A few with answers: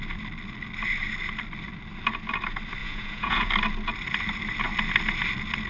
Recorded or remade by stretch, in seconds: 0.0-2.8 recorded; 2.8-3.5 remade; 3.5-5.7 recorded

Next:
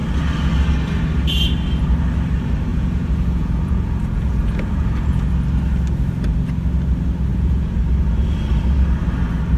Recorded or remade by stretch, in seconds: 0.0-2.7 recorded; 2.7-5.3 remade; 5.3-7.3 recorded; 7.3-7.8 remade; 7.8-9.6 recorded

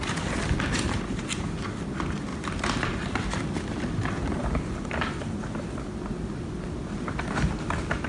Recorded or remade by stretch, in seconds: 0.0-8.1 recorded

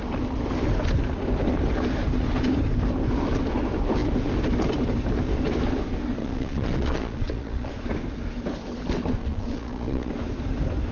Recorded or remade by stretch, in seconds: 0.0-6.2 recorded; 6.2-7.7 remade; 7.7-9.2 recorded; 9.2-10.1 remade; 10.1-10.9 recorded

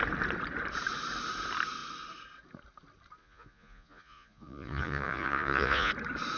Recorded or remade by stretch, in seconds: 0.0-3.2 recorded; 3.2-5.9 remade; 5.9-6.4 recorded

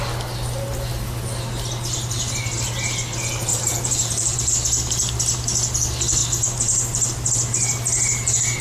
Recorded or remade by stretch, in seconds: 0.0-3.5 recorded; 3.5-4.5 remade; 4.5-8.6 recorded

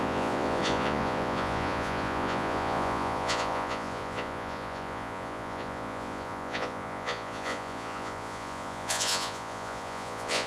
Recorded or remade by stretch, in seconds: 0.0-10.5 remade

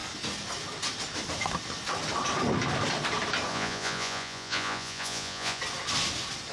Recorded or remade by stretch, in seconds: 0.0-3.5 recorded; 3.5-5.6 remade; 5.6-6.5 recorded